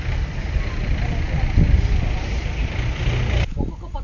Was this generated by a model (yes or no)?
no